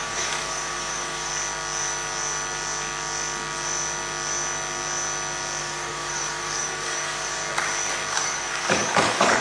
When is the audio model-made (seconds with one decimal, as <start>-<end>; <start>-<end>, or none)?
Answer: 0.0-1.3; 5.6-7.4; 8.1-9.4